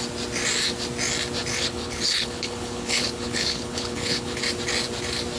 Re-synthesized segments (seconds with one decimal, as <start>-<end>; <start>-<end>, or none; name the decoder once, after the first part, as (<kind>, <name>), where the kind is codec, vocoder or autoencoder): 1.5-4.4 (codec, HILCodec)